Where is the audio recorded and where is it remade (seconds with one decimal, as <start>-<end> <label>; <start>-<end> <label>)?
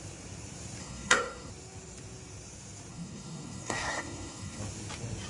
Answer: 0.0-0.8 recorded; 0.8-1.5 remade; 1.5-2.9 recorded; 2.9-4.6 remade; 4.6-5.3 recorded